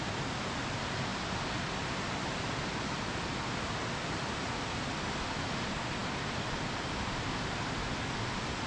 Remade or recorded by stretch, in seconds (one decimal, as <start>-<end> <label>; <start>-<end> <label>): 0.0-6.0 recorded; 6.0-6.6 remade; 6.6-8.7 recorded